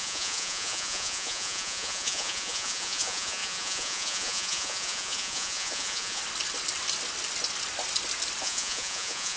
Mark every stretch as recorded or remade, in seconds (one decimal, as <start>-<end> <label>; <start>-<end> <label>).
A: 0.0-6.2 remade; 6.2-8.4 recorded; 8.4-9.4 remade